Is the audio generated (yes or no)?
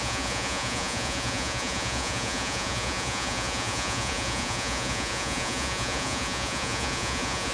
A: yes